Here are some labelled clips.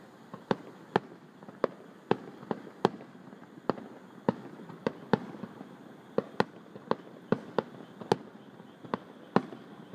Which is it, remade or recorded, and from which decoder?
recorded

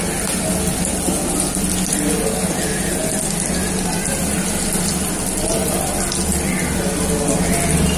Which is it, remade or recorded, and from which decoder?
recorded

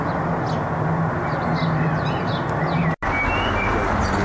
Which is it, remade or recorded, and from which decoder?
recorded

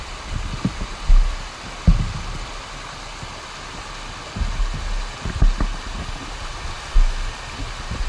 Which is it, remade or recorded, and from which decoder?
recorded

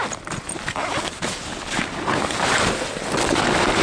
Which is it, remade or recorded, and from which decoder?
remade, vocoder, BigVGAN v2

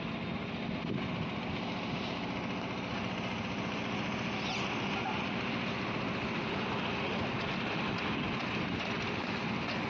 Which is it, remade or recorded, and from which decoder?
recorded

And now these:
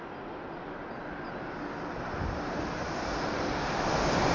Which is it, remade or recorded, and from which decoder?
recorded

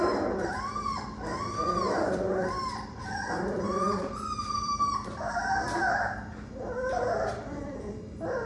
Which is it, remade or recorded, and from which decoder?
remade, vocoder, BigVGAN v2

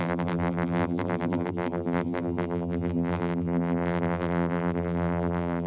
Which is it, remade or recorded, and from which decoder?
remade, vocoder, BigVGAN v2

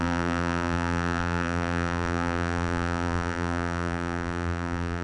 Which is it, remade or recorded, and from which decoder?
remade, vocoder, BigVGAN v2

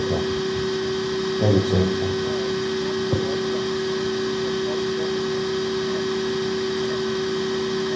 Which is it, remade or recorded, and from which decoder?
recorded